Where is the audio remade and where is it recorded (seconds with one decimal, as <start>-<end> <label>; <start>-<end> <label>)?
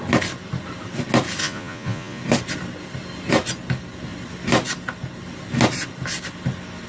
0.0-1.4 recorded; 1.4-2.2 remade; 2.2-6.9 recorded